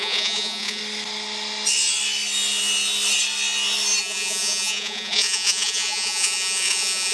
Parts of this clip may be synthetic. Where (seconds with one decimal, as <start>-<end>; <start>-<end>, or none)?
0.0-0.8; 4.0-7.1